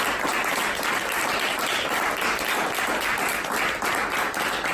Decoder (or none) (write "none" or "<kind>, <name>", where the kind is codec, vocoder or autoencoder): none